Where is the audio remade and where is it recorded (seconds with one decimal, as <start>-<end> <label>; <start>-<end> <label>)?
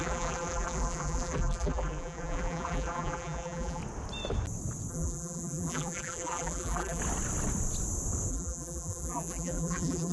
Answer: 0.0-3.8 remade; 3.8-4.9 recorded; 4.9-7.0 remade; 7.0-8.3 recorded; 8.3-10.1 remade